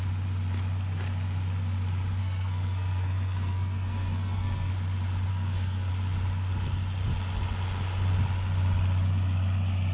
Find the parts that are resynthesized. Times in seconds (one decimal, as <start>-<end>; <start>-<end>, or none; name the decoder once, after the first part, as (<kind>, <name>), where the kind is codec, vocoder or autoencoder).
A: 2.2-4.7 (codec, SNAC); 5.3-5.9